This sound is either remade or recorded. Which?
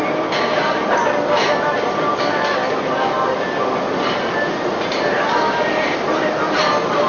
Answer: recorded